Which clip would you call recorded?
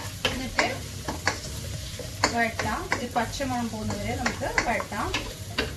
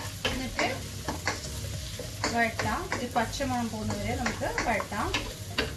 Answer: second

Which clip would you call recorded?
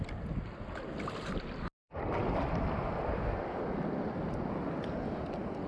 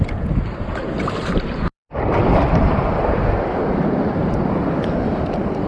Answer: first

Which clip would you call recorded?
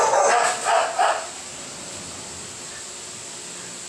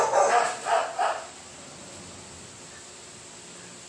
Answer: first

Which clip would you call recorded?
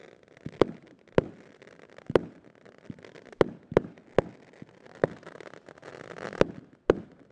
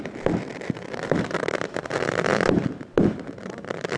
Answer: first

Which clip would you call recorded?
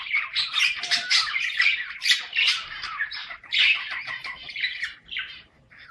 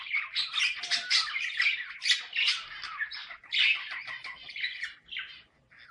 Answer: second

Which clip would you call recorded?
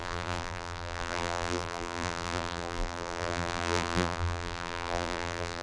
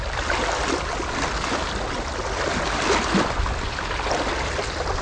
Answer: second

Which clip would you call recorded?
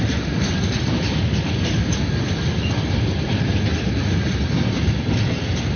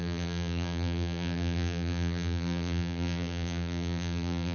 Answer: first